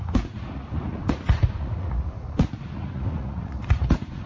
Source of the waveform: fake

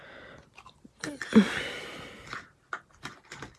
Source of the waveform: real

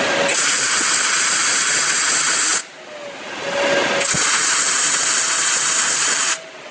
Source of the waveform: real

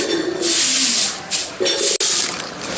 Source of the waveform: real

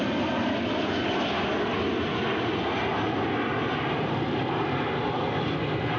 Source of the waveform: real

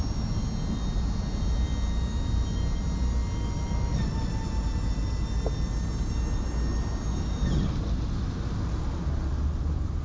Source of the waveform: real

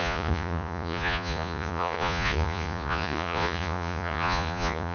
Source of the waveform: fake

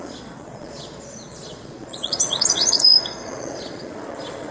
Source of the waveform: fake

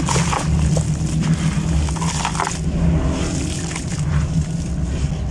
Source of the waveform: real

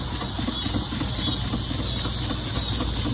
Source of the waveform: real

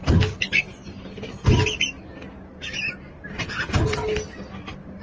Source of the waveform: real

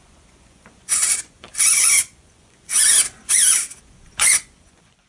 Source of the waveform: fake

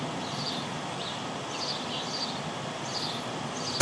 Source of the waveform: real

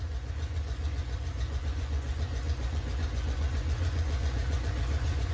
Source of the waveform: fake